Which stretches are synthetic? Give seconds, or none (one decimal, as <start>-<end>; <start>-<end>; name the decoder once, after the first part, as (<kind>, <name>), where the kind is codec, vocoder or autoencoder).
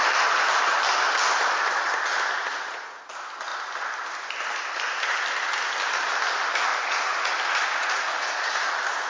2.5-3.1 (vocoder, Vocos); 6.7-7.3; 7.7-8.7